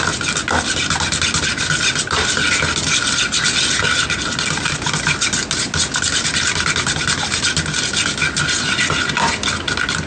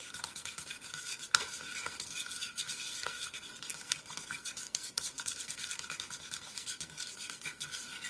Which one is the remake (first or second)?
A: second